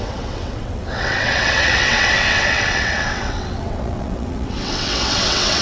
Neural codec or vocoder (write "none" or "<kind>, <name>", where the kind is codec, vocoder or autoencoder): vocoder, WaveNeXt